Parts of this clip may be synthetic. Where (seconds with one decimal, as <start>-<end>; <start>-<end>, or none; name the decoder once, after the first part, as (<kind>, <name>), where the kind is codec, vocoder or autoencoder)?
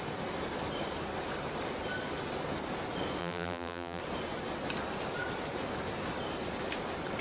3.2-4.0 (vocoder, BigVGAN v2)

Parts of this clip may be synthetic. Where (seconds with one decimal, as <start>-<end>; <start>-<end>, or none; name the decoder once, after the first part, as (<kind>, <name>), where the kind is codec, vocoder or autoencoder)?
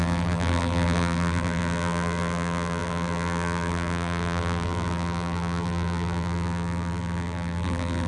0.0-8.1 (vocoder, BigVGAN v2)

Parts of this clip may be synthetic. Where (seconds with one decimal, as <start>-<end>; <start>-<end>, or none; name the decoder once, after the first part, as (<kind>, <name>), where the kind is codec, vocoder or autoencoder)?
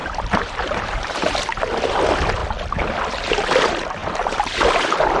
0.0-1.3 (vocoder, BigVGAN v2); 4.0-5.2